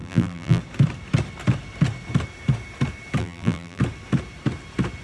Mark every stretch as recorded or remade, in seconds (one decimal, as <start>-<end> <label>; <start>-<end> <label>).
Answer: 0.0-0.6 remade; 0.6-3.2 recorded; 3.2-3.8 remade; 3.8-5.0 recorded